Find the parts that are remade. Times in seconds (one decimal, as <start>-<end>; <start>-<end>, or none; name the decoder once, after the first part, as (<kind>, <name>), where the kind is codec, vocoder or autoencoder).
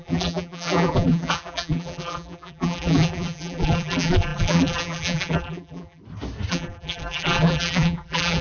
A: 0.0-6.0 (vocoder, BigVGAN v2); 6.5-8.4